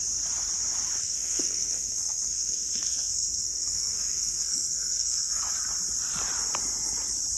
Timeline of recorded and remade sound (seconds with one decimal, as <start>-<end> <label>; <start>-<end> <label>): 0.0-1.0 recorded; 1.0-5.4 remade; 5.4-7.4 recorded